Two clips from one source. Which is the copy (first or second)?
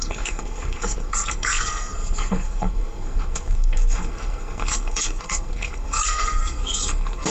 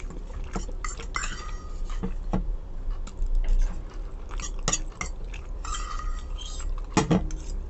first